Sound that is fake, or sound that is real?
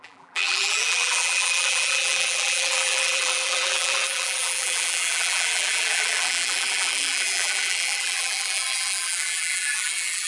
fake